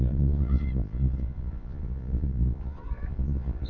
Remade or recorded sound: remade